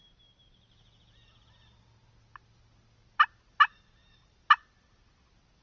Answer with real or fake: real